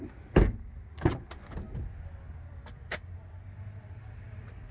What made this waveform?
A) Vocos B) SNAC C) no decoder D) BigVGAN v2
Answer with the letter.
C